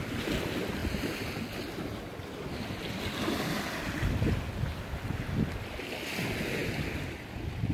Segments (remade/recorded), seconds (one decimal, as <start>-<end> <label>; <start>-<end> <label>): 0.0-7.7 recorded